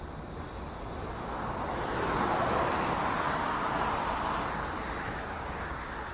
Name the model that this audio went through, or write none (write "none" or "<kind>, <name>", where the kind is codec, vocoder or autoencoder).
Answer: none